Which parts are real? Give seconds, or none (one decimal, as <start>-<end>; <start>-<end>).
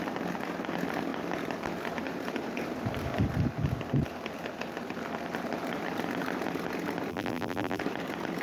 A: 0.0-7.1; 7.8-8.4